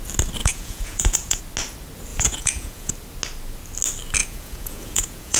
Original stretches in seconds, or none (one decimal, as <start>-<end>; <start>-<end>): 0.0-0.4; 1.4-2.1; 2.9-4.2